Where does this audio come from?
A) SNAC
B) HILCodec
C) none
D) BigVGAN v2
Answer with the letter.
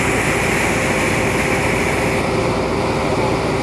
C